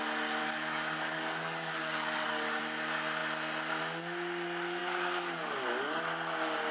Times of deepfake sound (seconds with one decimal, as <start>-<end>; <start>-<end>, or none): 0.4-2.6; 4.8-6.0